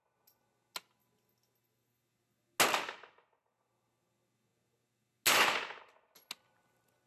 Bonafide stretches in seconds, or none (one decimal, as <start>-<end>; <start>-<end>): 0.0-7.1

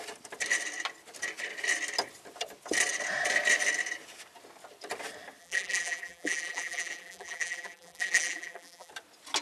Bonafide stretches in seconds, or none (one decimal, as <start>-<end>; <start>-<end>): 0.0-5.4; 8.9-9.4